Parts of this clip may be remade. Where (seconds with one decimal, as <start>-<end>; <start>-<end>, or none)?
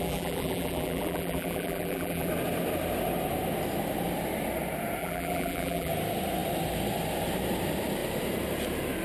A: 0.0-2.3; 5.0-5.9